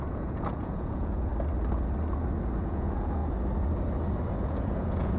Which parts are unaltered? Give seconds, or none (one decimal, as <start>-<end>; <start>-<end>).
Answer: 1.3-2.6; 3.2-4.4